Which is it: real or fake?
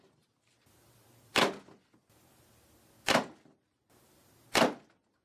real